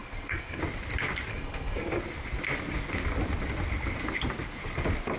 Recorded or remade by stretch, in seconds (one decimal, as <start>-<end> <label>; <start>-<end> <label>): 0.0-0.6 remade; 0.6-1.3 recorded; 1.3-2.0 remade; 2.0-5.2 recorded